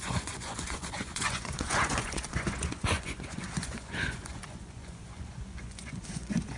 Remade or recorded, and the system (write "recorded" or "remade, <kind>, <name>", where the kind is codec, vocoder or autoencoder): remade, vocoder, Vocos